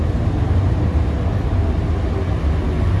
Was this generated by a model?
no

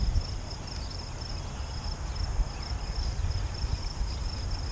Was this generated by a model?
no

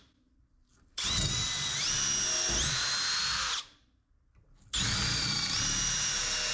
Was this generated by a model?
no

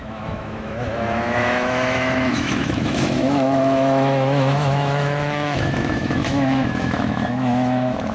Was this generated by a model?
yes